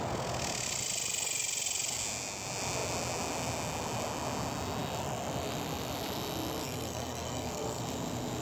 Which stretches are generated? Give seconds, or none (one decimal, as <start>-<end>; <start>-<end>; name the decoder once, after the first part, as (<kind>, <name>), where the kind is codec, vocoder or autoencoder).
6.6-7.8 (codec, SNAC)